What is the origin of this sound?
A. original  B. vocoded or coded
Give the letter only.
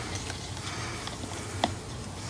A